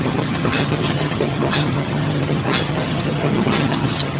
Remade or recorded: remade